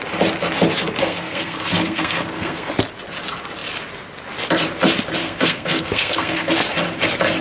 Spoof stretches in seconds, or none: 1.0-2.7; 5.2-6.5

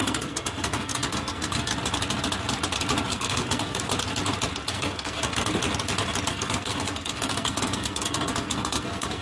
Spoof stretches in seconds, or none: 0.0-1.7; 3.1-3.9; 4.7-5.5; 6.3-9.2